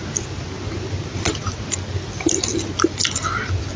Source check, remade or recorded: recorded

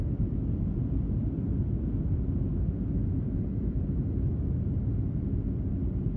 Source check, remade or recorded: recorded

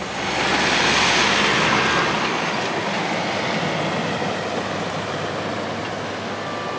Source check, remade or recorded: recorded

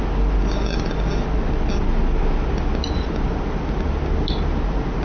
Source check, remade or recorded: recorded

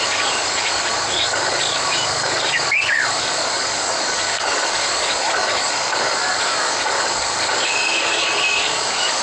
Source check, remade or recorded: remade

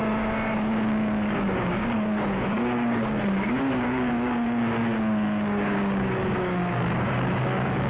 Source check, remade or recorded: remade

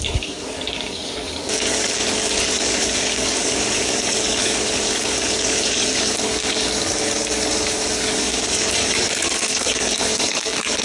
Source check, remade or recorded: remade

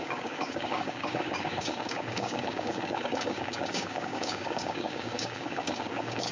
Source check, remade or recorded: remade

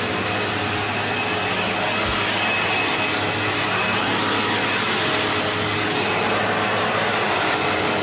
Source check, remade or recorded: recorded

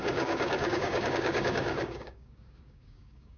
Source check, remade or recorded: remade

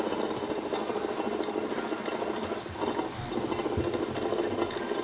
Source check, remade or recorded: recorded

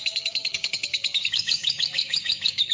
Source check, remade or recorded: remade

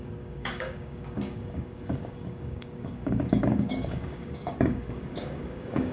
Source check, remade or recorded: remade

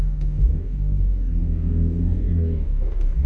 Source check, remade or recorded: remade